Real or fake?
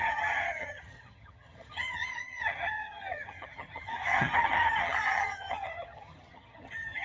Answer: fake